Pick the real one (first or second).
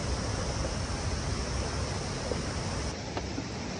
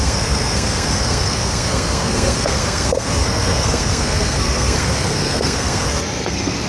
first